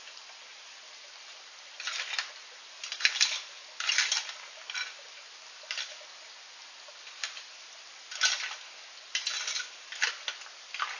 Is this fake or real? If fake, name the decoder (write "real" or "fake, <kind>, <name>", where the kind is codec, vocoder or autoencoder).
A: real